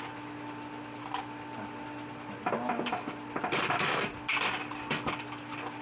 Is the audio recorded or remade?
recorded